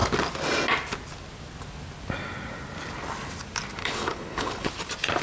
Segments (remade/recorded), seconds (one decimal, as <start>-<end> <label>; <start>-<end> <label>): 0.0-3.8 recorded; 3.8-4.7 remade; 4.7-5.2 recorded